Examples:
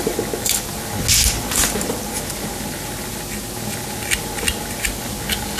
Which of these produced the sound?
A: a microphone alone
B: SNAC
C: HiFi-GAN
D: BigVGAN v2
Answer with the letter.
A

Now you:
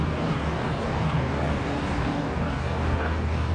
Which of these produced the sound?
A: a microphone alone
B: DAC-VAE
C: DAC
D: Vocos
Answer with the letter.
C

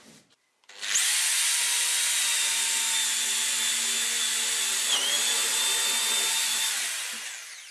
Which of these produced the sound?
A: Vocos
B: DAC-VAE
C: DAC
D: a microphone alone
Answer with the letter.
D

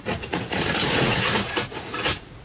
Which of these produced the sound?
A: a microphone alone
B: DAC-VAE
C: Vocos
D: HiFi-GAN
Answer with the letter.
C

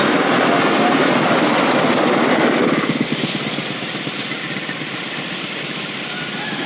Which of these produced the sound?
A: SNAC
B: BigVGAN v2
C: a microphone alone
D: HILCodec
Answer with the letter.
C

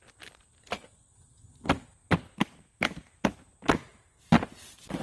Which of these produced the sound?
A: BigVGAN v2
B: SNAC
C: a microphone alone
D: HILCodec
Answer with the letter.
C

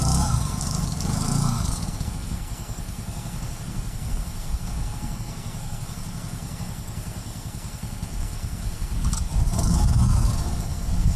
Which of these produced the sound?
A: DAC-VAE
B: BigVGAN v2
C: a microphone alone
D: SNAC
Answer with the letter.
D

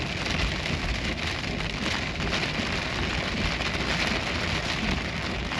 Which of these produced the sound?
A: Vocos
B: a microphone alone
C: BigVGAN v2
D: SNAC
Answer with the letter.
B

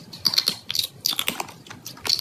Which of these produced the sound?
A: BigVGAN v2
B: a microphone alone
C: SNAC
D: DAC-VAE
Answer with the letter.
B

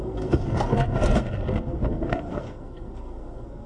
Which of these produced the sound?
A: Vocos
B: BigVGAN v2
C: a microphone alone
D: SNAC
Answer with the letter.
D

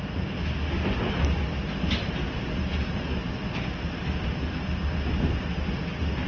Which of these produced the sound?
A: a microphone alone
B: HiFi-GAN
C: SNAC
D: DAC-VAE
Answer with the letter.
A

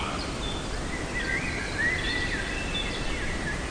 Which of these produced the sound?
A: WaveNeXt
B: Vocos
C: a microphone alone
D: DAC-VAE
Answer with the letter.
C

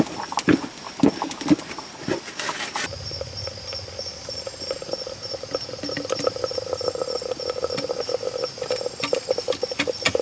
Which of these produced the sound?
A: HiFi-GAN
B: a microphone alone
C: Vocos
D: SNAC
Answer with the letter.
B